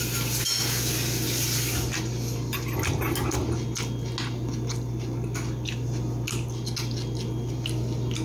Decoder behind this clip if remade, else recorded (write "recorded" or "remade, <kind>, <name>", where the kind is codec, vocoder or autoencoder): recorded